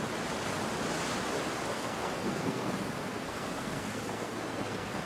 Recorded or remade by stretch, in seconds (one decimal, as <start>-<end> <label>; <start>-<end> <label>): 0.0-1.7 recorded; 1.7-5.1 remade